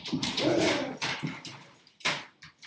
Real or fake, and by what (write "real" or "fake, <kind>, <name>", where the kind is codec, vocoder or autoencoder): fake, vocoder, BigVGAN v2